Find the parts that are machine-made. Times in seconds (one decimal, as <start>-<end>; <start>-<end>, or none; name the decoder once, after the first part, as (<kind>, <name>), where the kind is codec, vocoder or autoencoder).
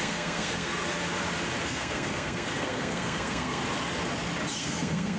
0.0-0.8 (codec, SNAC); 1.6-3.6; 4.5-5.2